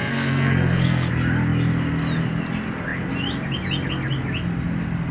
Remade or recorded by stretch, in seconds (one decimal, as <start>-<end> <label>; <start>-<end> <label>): 0.0-1.1 remade; 1.1-5.1 recorded